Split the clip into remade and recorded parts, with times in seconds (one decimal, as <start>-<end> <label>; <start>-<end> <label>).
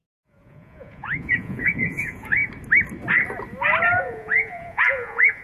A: 0.0-2.4 remade; 2.4-4.0 recorded; 4.0-5.4 remade